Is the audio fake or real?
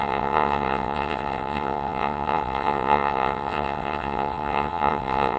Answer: fake